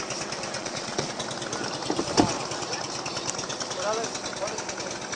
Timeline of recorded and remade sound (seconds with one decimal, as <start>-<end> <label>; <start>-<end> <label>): 0.0-0.6 recorded; 0.6-1.1 remade; 1.1-5.2 recorded